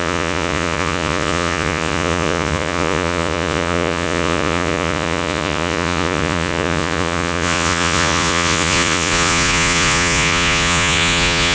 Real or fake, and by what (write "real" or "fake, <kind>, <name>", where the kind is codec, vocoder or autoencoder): fake, vocoder, Vocos